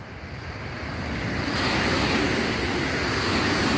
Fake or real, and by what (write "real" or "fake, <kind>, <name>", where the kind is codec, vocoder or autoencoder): real